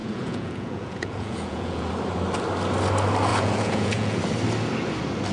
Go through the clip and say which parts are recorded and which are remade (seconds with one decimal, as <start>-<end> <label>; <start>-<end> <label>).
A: 0.0-1.9 remade; 1.9-3.3 recorded; 3.3-4.2 remade; 4.2-5.3 recorded